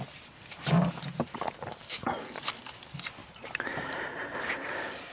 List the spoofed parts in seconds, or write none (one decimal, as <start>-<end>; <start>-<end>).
3.2-4.1

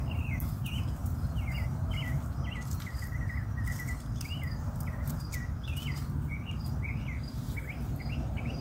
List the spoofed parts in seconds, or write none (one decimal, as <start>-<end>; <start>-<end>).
none

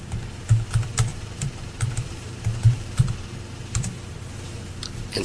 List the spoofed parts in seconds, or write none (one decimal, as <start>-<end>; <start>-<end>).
1.1-4.2

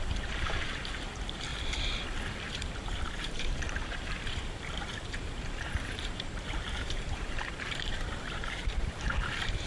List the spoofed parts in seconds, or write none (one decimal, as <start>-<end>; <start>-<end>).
0.0-1.5; 2.5-9.7

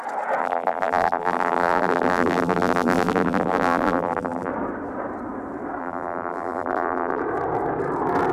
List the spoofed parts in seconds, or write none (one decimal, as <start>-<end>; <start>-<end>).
0.4-4.5; 5.8-7.2

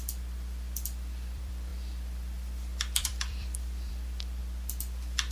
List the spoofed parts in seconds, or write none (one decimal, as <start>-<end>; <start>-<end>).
0.0-4.4

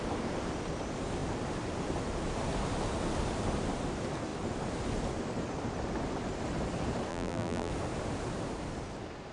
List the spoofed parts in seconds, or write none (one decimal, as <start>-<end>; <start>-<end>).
7.1-7.7

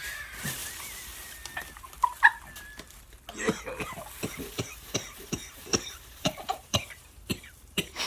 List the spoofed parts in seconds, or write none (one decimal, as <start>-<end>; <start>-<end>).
0.0-0.6; 4.4-8.1